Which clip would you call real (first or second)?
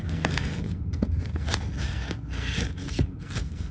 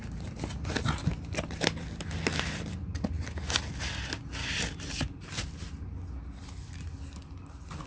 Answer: second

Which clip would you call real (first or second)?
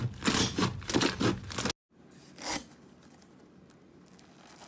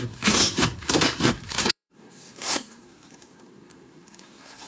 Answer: first